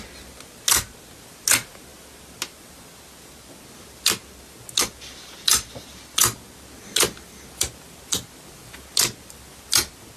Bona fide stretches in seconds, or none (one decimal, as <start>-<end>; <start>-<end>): 0.0-10.2